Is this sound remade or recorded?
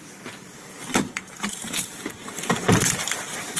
remade